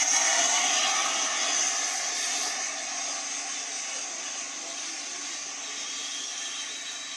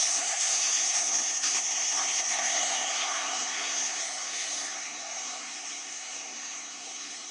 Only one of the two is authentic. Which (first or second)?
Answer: first